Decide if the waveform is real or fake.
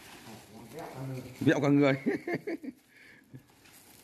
real